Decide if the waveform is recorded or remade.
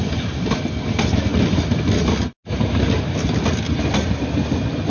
recorded